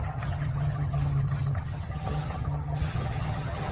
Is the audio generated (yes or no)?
yes